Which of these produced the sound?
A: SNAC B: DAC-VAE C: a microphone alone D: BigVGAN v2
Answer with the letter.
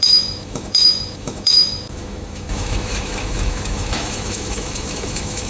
B